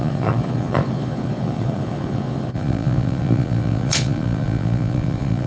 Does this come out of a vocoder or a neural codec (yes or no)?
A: yes